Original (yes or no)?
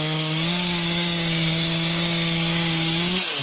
no